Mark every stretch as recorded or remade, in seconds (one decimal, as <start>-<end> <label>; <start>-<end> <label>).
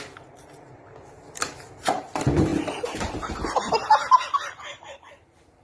0.0-5.6 recorded